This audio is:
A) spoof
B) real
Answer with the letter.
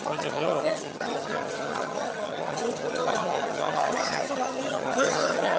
A